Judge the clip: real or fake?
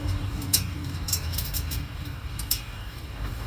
fake